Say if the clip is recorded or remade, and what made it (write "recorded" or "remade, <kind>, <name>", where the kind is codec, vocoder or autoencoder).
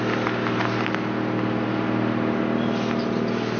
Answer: recorded